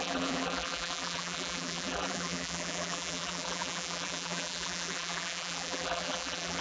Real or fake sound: fake